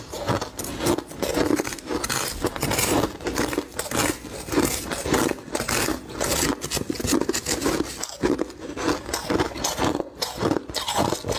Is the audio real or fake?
real